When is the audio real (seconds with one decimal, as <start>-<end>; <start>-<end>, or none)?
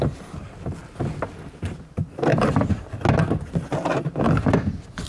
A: 0.8-3.9